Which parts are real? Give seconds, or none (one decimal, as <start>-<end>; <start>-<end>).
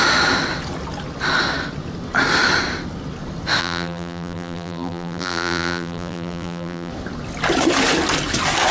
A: 0.0-3.6; 6.9-8.7